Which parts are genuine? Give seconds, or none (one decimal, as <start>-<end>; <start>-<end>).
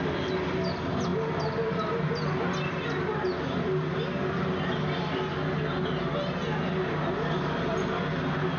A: 0.0-8.6